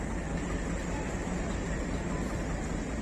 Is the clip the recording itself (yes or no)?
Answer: yes